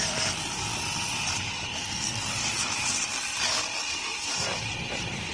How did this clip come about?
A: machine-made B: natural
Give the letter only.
B